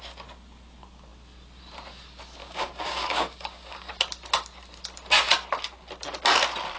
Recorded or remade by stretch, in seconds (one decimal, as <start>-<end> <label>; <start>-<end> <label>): 0.0-2.4 recorded; 2.4-3.9 remade; 3.9-6.8 recorded